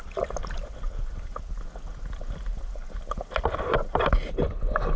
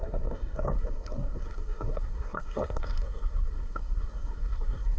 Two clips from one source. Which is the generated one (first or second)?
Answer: second